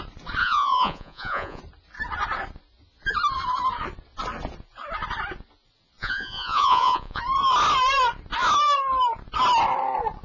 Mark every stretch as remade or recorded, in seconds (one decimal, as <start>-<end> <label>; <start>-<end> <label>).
0.0-0.4 recorded; 0.4-1.6 remade; 1.6-6.0 recorded; 6.0-7.2 remade; 7.2-10.2 recorded